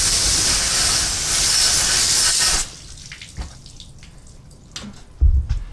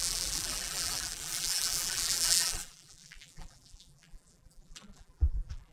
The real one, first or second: first